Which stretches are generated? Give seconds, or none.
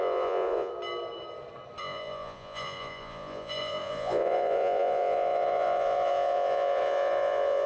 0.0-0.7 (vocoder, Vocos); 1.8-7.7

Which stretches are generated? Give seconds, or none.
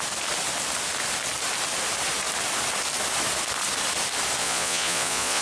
4.4-5.4 (vocoder, Vocos)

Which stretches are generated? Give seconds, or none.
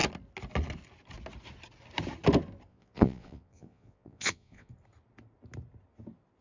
2.7-4.7 (vocoder, Vocos)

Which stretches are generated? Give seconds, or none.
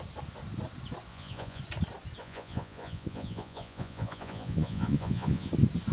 1.1-1.6 (vocoder, Vocos); 2.2-5.5